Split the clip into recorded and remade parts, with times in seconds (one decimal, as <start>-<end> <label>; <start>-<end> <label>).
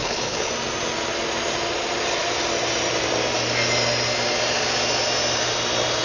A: 0.0-0.5 remade; 0.5-6.0 recorded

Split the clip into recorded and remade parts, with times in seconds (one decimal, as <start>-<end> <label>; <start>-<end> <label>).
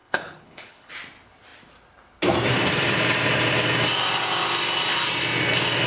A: 0.0-0.9 remade; 0.9-5.9 recorded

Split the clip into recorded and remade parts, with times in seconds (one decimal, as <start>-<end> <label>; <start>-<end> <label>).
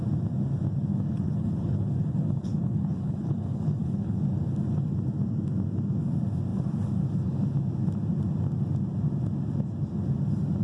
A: 0.0-0.9 recorded; 0.9-4.2 remade; 4.2-10.6 recorded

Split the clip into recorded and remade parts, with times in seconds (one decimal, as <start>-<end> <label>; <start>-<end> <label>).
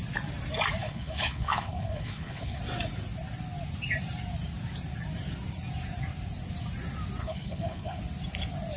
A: 0.0-0.8 recorded; 0.8-2.6 remade; 2.6-7.2 recorded; 7.2-8.0 remade; 8.0-8.8 recorded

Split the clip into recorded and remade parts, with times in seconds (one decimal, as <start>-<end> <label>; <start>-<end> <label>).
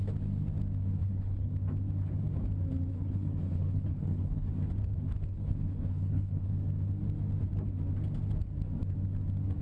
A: 0.0-1.0 recorded; 1.0-1.5 remade; 1.5-2.9 recorded; 2.9-4.5 remade; 4.5-5.3 recorded; 5.3-6.5 remade; 6.5-9.6 recorded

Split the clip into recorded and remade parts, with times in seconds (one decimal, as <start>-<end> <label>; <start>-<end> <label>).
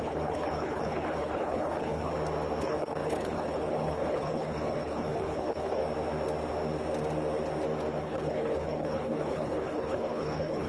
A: 0.0-2.1 remade; 2.1-2.6 recorded; 2.6-5.8 remade; 5.8-8.0 recorded; 8.0-10.7 remade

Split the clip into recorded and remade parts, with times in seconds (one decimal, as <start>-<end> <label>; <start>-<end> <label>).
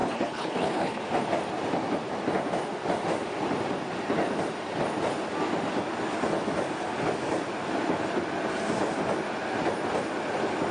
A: 0.0-1.0 remade; 1.0-10.7 recorded